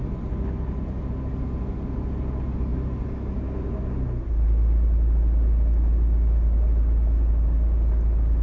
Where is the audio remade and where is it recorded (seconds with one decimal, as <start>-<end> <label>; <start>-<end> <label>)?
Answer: 0.0-8.4 recorded